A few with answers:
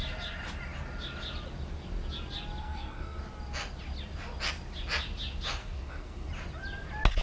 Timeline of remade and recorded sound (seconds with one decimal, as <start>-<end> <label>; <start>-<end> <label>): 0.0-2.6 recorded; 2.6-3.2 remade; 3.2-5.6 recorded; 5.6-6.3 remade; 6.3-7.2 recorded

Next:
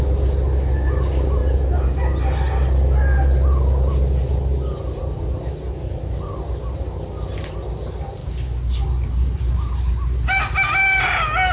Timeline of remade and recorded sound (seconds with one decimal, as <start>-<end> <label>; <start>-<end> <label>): 0.0-11.5 recorded

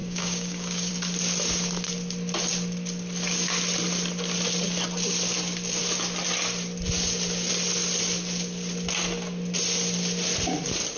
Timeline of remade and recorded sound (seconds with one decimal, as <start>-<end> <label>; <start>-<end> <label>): 0.0-0.9 remade; 0.9-11.0 recorded

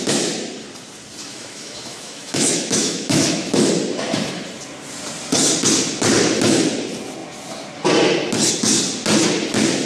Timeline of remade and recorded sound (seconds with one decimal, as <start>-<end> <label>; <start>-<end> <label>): 0.0-1.3 recorded; 1.3-3.7 remade; 3.7-9.9 recorded

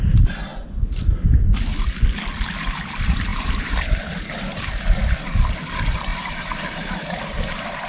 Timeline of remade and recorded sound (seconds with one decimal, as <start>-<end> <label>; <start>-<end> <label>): 0.0-0.5 recorded; 0.5-1.3 remade; 1.3-3.3 recorded; 3.3-4.7 remade; 4.7-6.1 recorded; 6.1-7.9 remade

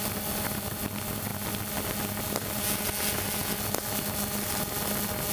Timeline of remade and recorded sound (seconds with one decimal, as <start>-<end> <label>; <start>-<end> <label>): 0.0-5.3 recorded